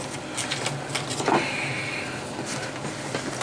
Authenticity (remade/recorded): recorded